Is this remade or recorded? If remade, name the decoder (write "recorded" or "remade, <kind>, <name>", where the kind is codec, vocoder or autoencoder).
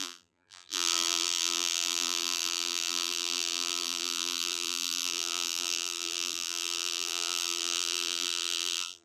remade, vocoder, BigVGAN v2